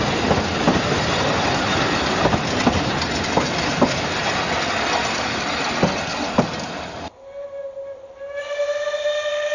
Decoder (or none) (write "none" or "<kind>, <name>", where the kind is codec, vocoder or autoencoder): none